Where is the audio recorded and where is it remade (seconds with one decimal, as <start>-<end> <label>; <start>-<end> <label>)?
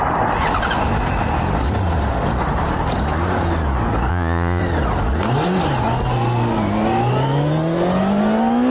0.0-4.1 recorded; 4.1-4.6 remade; 4.6-8.7 recorded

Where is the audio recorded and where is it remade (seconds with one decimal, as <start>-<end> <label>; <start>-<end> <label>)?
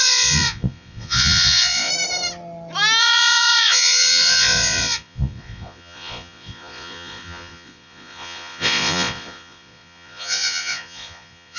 0.0-1.9 remade; 1.9-3.0 recorded; 3.0-11.6 remade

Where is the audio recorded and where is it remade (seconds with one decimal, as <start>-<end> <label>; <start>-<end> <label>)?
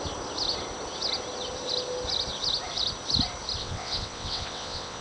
0.0-3.6 recorded; 3.6-5.0 remade